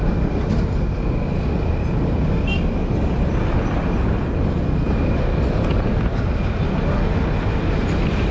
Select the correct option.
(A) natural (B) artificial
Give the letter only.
A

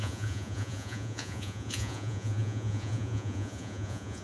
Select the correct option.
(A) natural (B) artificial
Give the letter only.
B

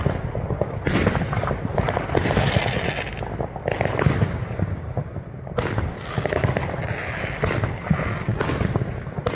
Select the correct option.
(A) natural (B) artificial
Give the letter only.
A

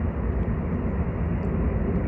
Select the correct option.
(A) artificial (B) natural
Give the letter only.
B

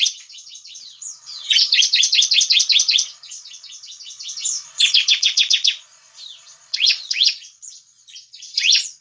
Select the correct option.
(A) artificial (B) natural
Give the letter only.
A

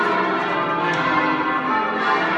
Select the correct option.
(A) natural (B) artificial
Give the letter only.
A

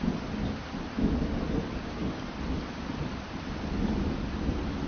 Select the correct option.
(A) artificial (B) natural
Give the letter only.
B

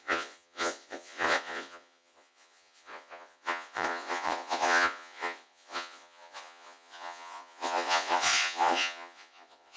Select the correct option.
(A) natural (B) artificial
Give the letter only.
B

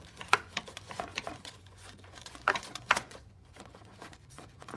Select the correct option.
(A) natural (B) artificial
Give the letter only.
B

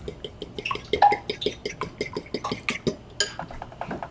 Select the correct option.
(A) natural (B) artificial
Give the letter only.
A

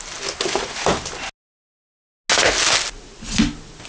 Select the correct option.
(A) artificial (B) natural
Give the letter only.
B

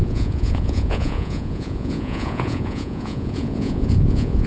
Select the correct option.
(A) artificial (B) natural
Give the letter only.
A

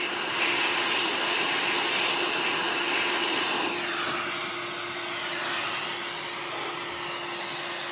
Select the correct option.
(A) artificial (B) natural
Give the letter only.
B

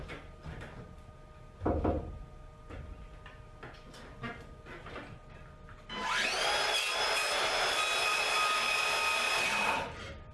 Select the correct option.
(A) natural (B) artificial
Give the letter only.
A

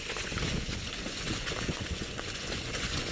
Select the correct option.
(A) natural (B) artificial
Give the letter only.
B